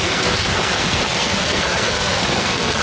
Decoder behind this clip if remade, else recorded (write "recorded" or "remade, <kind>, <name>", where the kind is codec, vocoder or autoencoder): remade, codec, SNAC